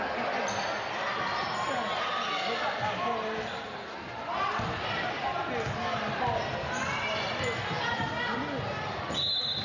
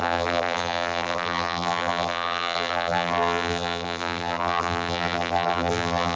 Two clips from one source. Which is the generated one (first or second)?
second